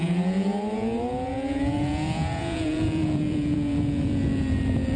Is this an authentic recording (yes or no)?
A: no